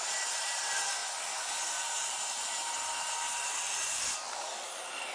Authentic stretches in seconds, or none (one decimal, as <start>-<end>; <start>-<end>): 1.0-1.9